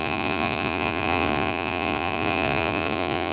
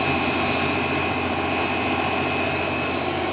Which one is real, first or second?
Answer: second